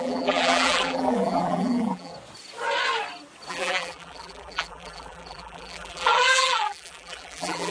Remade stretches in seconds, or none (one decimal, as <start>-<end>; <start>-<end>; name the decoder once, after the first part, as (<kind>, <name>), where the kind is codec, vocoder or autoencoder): 0.0-2.1 (vocoder, BigVGAN v2); 3.5-7.7